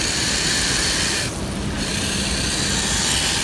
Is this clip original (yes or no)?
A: yes